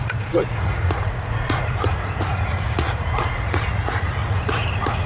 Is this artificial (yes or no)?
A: yes